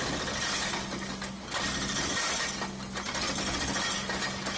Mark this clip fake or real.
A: real